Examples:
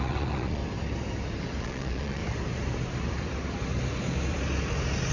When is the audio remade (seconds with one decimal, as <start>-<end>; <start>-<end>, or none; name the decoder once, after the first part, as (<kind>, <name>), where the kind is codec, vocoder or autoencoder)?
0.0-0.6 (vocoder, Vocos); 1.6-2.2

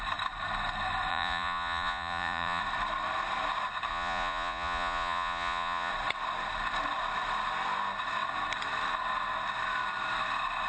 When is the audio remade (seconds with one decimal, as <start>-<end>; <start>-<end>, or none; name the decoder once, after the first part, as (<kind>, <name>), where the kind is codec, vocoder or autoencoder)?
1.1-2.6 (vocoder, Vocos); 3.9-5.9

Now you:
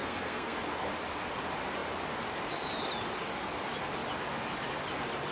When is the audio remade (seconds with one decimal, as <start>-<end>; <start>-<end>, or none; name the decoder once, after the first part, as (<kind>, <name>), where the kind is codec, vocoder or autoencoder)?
0.0-0.6 (codec, SNAC)